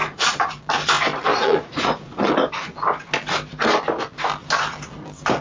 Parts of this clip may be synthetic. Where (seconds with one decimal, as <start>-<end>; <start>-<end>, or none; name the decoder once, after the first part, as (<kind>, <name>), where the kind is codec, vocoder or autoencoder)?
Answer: 0.0-0.6 (vocoder, Vocos); 1.3-2.3